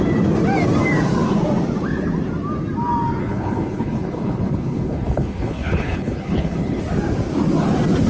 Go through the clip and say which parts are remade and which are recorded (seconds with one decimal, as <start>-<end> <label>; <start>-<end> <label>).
0.0-3.2 recorded; 3.2-6.8 remade; 6.8-8.1 recorded